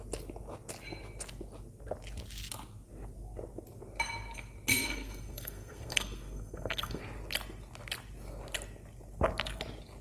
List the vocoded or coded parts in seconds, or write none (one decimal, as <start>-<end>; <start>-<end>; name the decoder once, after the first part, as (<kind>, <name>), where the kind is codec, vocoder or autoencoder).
4.7-7.0 (codec, SNAC)